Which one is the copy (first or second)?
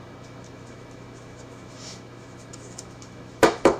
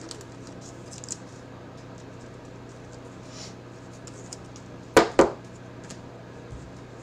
first